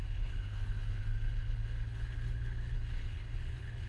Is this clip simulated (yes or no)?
yes